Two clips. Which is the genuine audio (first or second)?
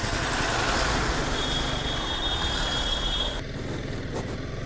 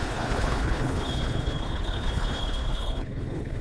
first